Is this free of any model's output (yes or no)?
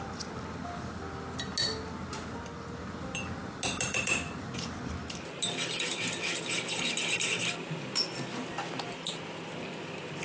yes